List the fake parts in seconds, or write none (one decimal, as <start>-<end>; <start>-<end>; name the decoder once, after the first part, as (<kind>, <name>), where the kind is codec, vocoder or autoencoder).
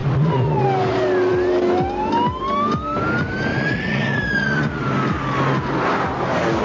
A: 0.0-0.6 (vocoder, Vocos); 3.5-4.8